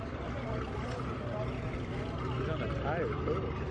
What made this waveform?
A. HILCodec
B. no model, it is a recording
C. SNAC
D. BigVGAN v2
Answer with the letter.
B